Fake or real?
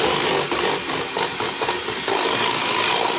real